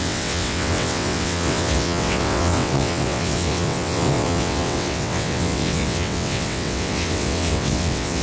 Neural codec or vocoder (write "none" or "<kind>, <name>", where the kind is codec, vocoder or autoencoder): vocoder, WaveNeXt